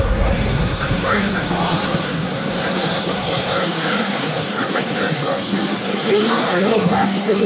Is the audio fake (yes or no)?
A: yes